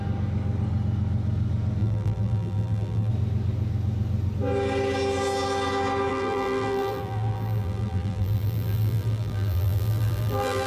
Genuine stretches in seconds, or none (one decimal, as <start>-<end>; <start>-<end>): 0.0-1.8; 3.1-6.1